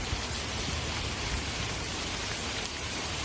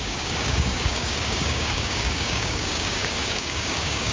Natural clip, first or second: first